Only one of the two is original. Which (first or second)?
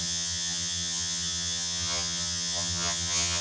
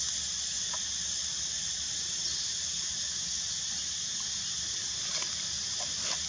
second